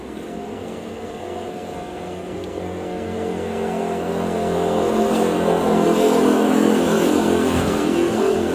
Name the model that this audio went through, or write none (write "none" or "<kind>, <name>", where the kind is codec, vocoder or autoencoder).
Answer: codec, SNAC